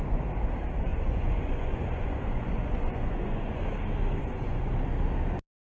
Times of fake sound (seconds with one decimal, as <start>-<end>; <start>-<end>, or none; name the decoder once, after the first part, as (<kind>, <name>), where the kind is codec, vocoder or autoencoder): 0.9-3.6 (vocoder, Vocos); 4.2-4.7